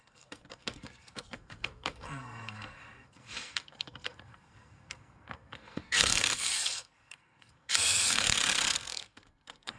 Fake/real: fake